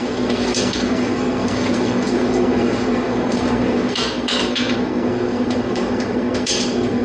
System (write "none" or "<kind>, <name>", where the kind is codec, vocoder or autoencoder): codec, SNAC